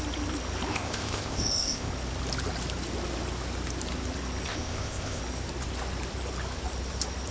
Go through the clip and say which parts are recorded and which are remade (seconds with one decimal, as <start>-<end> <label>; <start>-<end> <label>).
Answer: 0.0-0.7 recorded; 0.7-1.9 remade; 1.9-4.5 recorded; 4.5-5.2 remade; 5.2-7.3 recorded